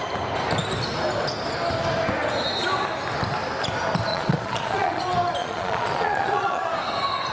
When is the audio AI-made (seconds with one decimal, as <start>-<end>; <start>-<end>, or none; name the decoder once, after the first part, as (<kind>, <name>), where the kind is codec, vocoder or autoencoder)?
4.1-5.0 (vocoder, Vocos); 5.4-6.7